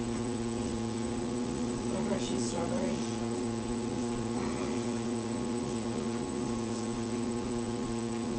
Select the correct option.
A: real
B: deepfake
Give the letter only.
B